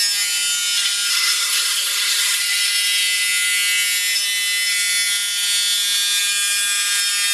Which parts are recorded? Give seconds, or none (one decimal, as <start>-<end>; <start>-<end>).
0.0-1.1; 2.4-7.3